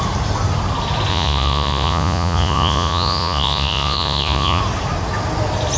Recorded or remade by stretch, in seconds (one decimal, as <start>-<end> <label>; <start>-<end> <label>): 0.0-1.1 recorded; 1.1-4.6 remade; 4.6-5.8 recorded